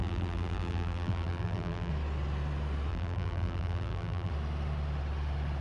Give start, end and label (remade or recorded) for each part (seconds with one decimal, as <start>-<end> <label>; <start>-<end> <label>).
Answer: 0.0-1.9 remade; 1.9-2.9 recorded; 2.9-4.3 remade; 4.3-5.6 recorded